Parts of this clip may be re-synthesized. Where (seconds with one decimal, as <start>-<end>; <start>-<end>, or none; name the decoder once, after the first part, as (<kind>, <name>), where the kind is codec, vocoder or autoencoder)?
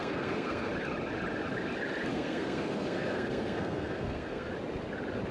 0.0-0.7 (codec, SNAC); 2.1-4.5